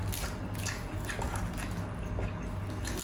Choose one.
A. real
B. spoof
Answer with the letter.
A